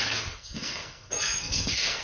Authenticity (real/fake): fake